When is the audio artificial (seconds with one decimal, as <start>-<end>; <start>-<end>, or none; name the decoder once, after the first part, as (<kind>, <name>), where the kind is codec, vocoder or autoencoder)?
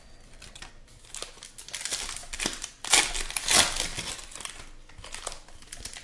2.2-3.1 (vocoder, BigVGAN v2); 3.9-4.5